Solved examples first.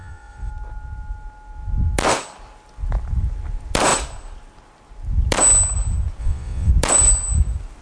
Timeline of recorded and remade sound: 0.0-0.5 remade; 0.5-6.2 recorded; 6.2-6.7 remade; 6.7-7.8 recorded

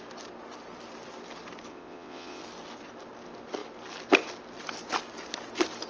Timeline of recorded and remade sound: 0.0-1.7 recorded; 1.7-2.4 remade; 2.4-5.9 recorded

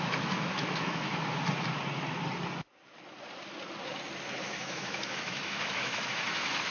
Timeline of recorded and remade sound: 0.0-1.1 remade; 1.1-4.4 recorded; 4.4-6.7 remade